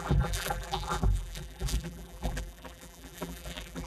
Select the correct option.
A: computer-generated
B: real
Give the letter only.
A